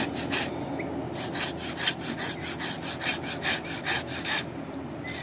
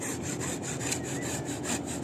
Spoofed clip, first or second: second